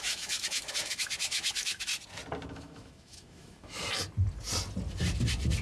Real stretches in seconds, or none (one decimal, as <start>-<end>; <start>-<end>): 1.9-2.5; 3.8-5.6